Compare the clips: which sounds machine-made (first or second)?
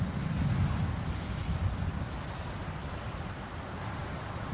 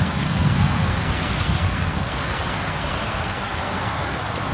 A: second